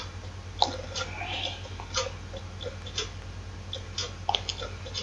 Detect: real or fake real